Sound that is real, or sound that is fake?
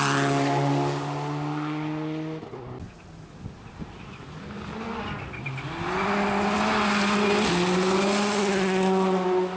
real